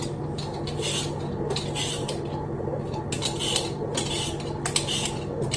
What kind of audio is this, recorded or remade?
recorded